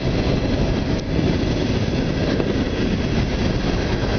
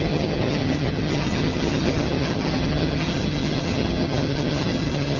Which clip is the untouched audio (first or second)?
first